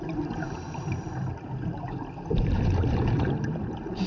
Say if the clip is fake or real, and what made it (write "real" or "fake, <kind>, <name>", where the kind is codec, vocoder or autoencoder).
real